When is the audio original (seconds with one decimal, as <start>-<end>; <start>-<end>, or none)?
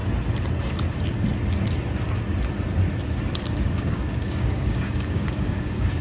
0.0-3.4